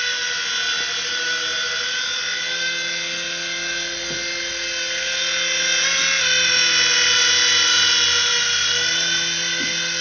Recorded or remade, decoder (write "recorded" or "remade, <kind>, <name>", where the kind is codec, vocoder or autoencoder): recorded